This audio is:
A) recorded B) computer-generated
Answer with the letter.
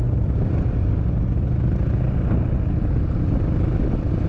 A